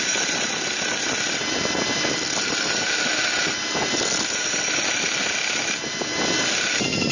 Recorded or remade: recorded